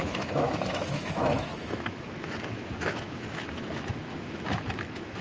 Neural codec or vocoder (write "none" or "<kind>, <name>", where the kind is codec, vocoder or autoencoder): autoencoder, DAC-VAE